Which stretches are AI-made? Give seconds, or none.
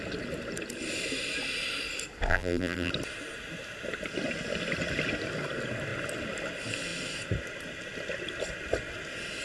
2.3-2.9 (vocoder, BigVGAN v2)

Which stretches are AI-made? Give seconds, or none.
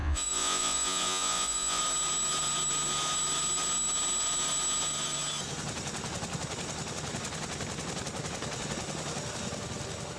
0.0-1.8 (vocoder, Vocos)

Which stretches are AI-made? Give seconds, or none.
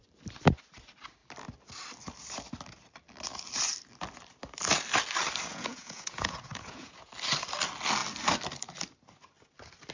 5.5-7.1 (vocoder, Vocos)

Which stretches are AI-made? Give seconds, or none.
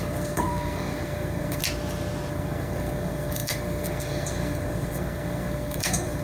0.0-1.6 (codec, SNAC); 2.3-6.2